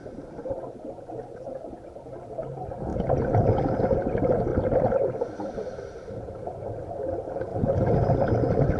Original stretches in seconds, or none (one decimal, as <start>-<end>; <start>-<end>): 0.6-2.9; 3.7-7.5; 8.1-8.8